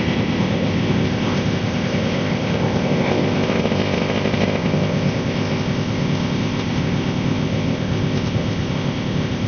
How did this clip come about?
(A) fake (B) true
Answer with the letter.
A